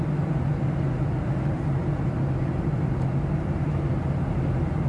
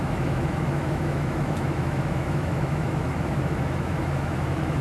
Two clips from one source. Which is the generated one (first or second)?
second